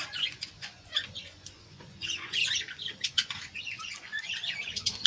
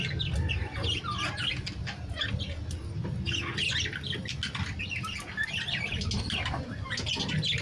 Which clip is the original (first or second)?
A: second